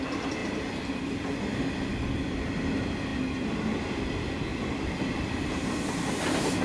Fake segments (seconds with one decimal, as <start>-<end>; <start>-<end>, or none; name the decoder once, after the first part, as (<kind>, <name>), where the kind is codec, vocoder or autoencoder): 0.4-1.4 (vocoder, BigVGAN v2); 3.1-3.6